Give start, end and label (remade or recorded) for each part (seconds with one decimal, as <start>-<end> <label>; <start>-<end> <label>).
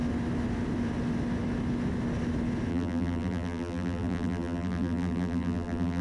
0.0-2.7 recorded; 2.7-6.0 remade